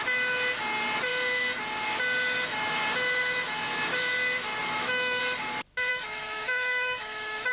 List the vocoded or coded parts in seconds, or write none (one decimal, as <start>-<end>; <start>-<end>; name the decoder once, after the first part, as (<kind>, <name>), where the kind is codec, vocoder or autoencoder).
4.6-5.2 (autoencoder, DAC-VAE); 5.9-7.5